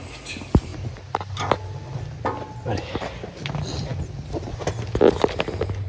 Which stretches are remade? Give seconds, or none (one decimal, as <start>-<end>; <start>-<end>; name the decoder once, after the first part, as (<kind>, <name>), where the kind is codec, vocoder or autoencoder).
none